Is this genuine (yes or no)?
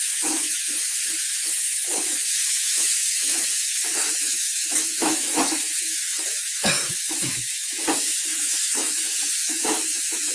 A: no